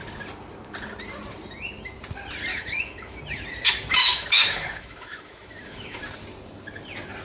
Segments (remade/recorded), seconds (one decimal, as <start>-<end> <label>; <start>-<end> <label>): 0.0-2.5 recorded; 2.5-3.2 remade; 3.2-4.0 recorded; 4.0-6.0 remade; 6.0-7.2 recorded

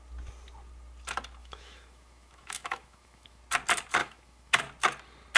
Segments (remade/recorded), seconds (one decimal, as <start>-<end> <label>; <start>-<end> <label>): 0.0-1.4 recorded; 1.4-3.4 remade; 3.4-4.0 recorded; 4.0-4.6 remade; 4.6-5.4 recorded